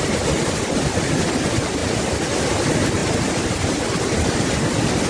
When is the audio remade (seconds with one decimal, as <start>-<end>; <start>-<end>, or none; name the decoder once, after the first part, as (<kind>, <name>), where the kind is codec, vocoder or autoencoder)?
none